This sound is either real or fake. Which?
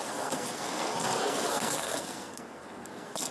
fake